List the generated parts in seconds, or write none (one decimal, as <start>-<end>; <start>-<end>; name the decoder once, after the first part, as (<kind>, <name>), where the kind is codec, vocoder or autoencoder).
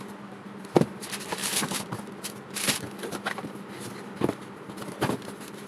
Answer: 1.4-2.1 (vocoder, BigVGAN v2)